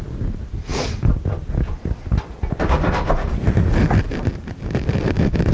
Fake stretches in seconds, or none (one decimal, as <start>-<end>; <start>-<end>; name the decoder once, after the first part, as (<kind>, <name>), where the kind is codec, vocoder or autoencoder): none